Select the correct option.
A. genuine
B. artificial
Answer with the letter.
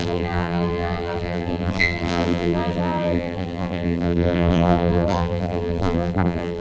B